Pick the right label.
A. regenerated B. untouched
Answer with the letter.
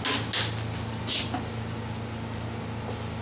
B